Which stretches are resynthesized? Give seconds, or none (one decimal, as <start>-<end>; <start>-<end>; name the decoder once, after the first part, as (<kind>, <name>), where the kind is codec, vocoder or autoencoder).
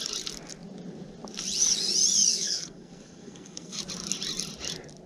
2.3-3.8 (codec, SNAC)